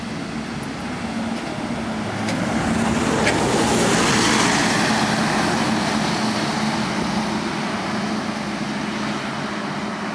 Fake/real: real